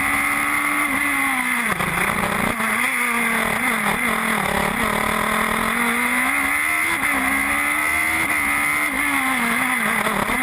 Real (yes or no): yes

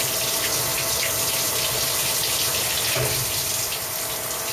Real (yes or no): yes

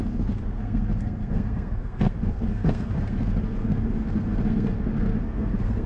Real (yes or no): no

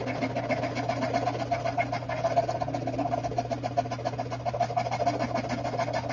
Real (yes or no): yes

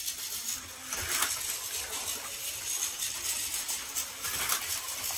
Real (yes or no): yes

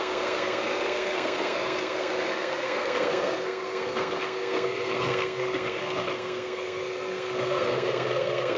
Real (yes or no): no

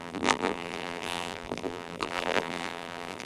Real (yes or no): no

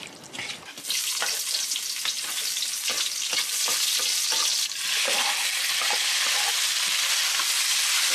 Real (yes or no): yes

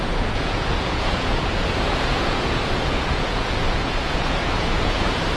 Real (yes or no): no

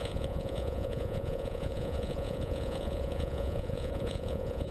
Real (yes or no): no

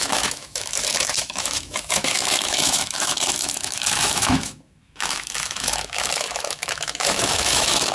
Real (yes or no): no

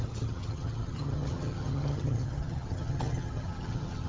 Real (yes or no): no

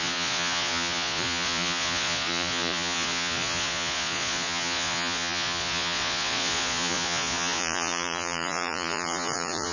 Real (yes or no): no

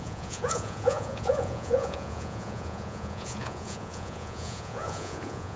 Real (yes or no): no